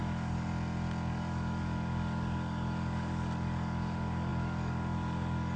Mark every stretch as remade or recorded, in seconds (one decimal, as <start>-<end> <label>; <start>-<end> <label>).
0.0-0.5 remade; 0.5-1.1 recorded; 1.1-5.6 remade